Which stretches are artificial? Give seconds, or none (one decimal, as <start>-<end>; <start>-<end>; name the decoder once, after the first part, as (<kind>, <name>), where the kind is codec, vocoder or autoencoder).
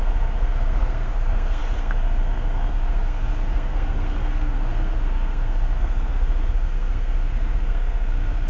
0.0-8.5 (codec, SNAC)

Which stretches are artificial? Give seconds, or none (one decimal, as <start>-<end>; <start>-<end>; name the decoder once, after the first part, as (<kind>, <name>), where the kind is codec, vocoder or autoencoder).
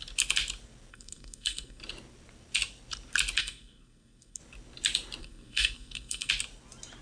0.9-1.8 (codec, SNAC); 3.4-4.4; 5.2-6.3